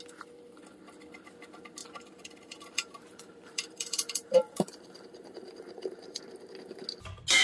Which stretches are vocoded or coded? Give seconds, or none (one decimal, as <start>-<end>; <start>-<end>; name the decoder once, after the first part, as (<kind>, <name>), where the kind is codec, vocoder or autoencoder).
1.8-6.2 (vocoder, BigVGAN v2)